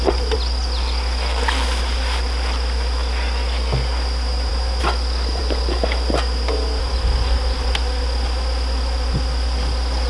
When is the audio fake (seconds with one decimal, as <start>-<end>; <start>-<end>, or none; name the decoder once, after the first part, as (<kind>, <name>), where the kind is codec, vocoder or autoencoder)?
none